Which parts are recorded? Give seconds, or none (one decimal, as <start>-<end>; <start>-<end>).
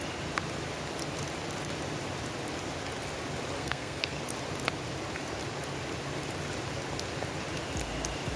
0.0-3.6; 4.2-8.4